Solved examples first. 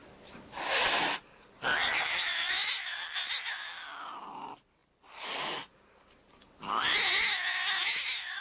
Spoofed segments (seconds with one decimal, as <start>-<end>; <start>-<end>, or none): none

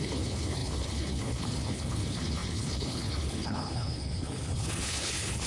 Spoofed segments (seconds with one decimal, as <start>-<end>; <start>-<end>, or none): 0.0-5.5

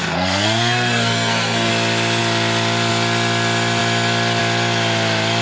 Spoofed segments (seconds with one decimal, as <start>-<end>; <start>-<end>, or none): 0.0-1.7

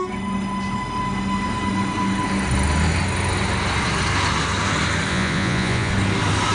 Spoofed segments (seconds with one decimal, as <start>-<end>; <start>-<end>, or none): 5.1-5.9

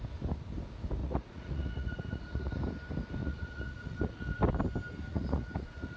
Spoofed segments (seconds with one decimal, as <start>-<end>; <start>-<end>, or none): 1.0-2.6; 3.2-4.4; 5.1-6.0

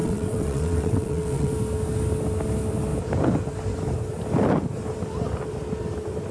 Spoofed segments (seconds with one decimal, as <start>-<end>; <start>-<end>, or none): 0.0-1.5